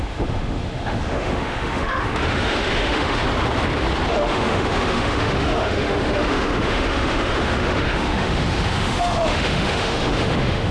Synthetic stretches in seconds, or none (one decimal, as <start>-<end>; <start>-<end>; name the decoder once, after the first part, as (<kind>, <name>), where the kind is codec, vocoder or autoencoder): 0.0-3.2 (autoencoder, DAC-VAE); 4.1-10.7